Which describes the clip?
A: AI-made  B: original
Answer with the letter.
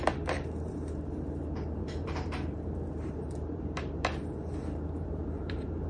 A